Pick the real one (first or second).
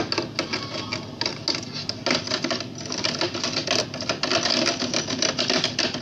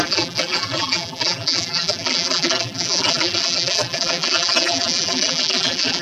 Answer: first